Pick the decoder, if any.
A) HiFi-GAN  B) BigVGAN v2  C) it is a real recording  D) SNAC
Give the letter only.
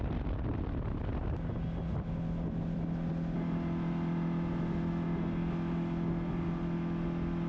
C